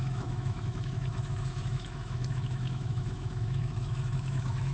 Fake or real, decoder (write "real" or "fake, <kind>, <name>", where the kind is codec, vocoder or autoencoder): fake, autoencoder, DAC-VAE